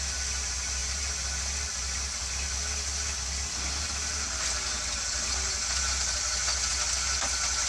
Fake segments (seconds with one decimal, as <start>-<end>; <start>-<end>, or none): none